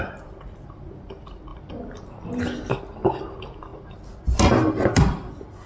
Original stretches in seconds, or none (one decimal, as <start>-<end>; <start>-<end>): 0.0-1.5; 2.7-5.7